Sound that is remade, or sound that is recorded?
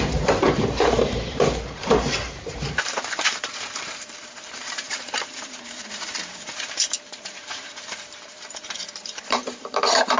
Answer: remade